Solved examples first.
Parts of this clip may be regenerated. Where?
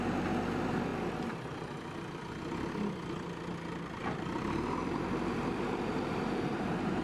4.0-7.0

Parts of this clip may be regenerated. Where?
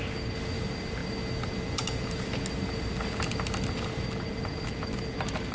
none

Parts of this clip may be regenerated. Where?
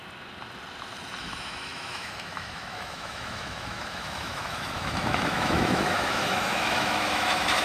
1.2-7.6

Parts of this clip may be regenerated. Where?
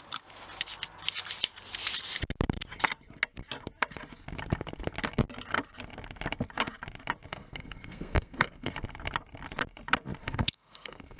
7.3-8.7; 10.2-11.2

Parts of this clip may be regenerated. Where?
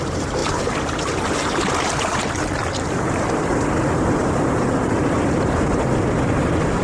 none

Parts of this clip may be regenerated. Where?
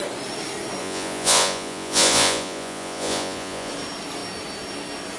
0.8-3.7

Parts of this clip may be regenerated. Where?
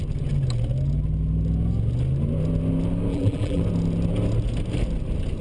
3.1-3.6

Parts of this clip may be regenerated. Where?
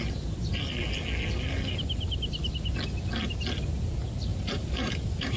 4.3-5.4